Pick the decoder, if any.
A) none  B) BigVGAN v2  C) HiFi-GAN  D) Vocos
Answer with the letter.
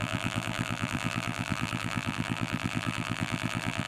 B